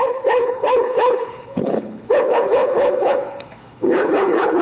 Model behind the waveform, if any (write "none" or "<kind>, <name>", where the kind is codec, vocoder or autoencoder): codec, HILCodec